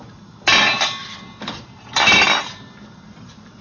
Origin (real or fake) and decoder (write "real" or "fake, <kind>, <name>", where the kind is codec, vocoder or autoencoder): real